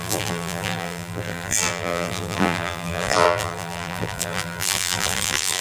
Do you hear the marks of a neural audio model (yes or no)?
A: yes